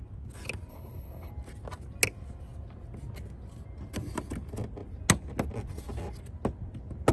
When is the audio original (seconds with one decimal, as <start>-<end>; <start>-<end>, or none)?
0.0-0.7; 1.3-7.1